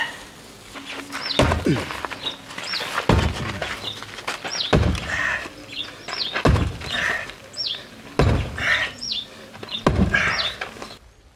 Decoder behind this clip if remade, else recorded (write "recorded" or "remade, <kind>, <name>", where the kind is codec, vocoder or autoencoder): recorded